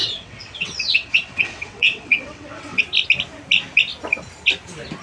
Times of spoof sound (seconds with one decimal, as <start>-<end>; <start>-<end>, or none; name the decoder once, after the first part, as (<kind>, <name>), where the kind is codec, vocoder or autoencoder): 0.0-2.8 (vocoder, WaveNeXt)